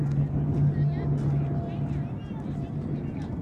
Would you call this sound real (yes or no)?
yes